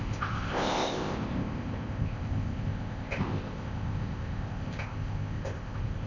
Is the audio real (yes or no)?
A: no